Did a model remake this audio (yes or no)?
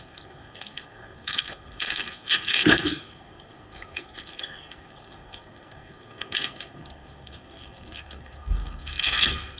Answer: yes